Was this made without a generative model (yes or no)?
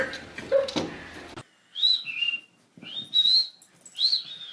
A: yes